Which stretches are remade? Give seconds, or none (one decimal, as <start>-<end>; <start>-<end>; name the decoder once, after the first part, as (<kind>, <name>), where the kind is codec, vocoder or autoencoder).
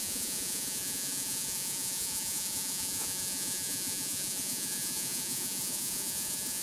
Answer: 0.0-6.6 (vocoder, Vocos)